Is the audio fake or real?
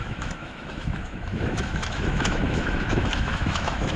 fake